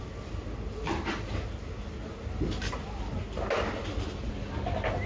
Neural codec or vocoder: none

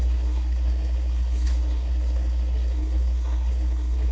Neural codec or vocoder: codec, SNAC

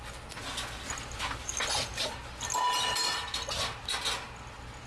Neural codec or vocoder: none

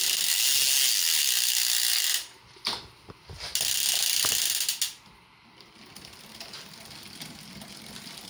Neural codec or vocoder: none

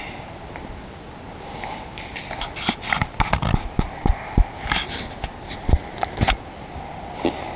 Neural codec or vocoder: none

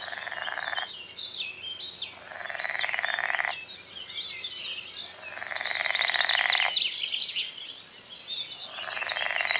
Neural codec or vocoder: none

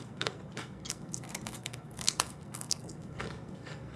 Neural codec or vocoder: codec, SNAC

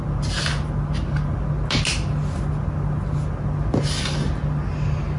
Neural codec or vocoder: none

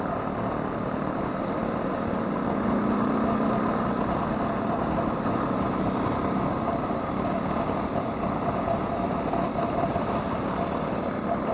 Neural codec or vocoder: none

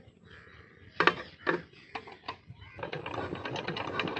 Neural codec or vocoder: none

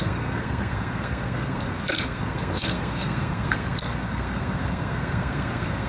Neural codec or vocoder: codec, SNAC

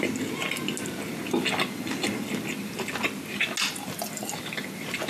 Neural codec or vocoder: none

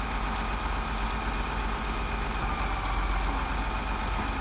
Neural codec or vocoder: none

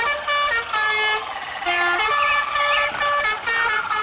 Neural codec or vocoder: none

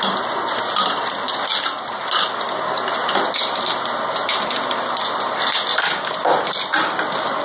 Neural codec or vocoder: none